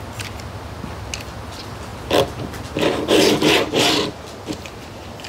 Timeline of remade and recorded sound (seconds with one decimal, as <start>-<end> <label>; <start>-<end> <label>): 0.0-5.3 recorded

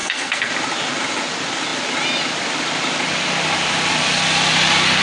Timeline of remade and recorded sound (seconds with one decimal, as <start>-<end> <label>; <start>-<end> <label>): 0.0-0.5 remade; 0.5-5.0 recorded

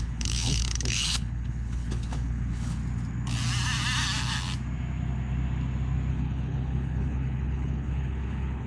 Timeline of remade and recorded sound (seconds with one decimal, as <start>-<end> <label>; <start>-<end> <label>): 0.0-2.8 remade; 2.8-6.1 recorded; 6.1-8.7 remade

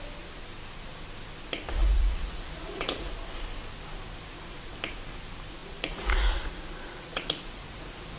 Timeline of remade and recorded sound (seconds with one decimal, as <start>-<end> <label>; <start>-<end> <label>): 0.0-1.8 recorded; 1.8-3.1 remade; 3.1-5.6 recorded; 5.6-7.5 remade; 7.5-8.2 recorded

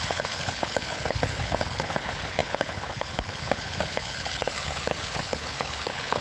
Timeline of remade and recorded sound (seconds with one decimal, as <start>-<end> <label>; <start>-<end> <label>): 0.0-6.2 remade

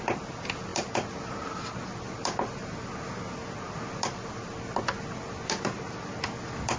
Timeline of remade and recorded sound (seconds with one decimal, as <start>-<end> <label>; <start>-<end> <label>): 0.0-6.8 recorded